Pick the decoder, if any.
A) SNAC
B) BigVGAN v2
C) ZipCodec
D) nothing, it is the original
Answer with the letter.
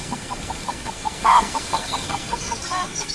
A